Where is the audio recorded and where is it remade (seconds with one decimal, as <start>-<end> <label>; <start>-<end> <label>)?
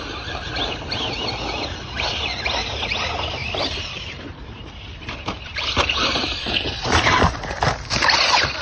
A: 0.0-3.4 recorded; 3.4-7.7 remade; 7.7-8.6 recorded